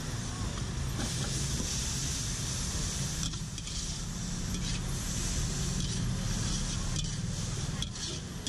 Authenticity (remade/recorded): recorded